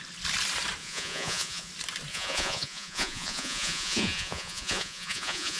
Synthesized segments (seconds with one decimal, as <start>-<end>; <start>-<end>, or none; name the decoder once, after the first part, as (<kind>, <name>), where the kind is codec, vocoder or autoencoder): 0.8-1.7 (vocoder, Vocos); 2.1-5.6

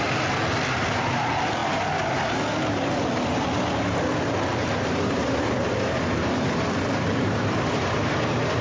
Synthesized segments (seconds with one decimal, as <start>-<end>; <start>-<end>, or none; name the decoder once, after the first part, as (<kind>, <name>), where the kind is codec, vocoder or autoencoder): 4.6-8.6 (vocoder, BigVGAN v2)